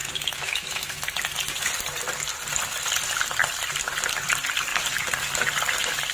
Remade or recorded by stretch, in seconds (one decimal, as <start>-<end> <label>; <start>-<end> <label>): 0.0-1.0 remade; 1.0-6.1 recorded